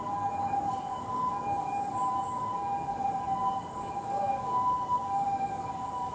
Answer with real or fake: fake